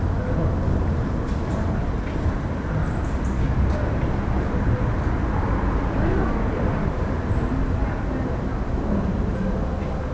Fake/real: real